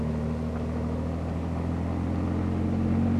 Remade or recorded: recorded